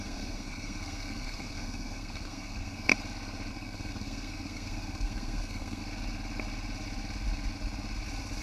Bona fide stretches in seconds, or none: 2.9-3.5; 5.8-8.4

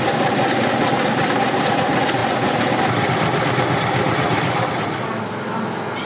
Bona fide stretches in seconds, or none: 0.0-6.1